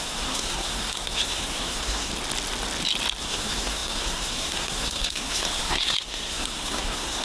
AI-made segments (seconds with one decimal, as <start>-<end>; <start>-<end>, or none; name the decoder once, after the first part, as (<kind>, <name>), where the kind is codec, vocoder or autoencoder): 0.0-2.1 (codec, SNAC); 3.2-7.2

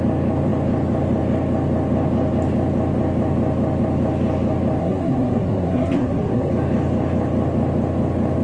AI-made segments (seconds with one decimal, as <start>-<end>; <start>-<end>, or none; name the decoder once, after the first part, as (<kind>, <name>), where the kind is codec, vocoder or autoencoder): 4.8-6.5 (codec, SNAC)

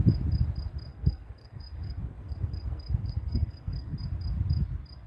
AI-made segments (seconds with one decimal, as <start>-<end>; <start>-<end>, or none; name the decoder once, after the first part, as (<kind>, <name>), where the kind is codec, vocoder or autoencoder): 0.9-4.0 (codec, SNAC)